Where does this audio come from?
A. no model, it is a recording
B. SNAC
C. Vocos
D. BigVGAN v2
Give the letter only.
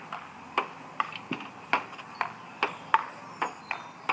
A